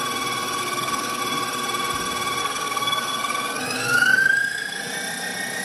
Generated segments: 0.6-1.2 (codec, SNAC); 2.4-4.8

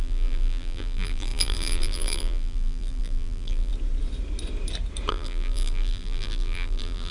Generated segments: 0.0-3.7 (vocoder, BigVGAN v2); 5.1-7.1

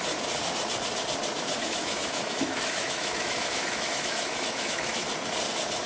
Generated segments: 1.6-5.1 (autoencoder, DAC-VAE)

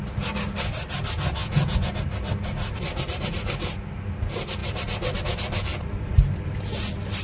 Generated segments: 1.4-1.9 (vocoder, Vocos)

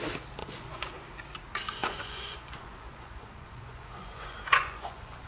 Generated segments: 0.4-0.9 (vocoder, Vocos); 1.8-5.3

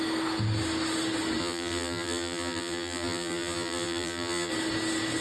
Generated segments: 1.4-4.5 (vocoder, BigVGAN v2)

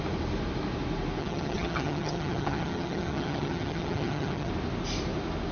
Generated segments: 1.2-4.5 (vocoder, HiFi-GAN)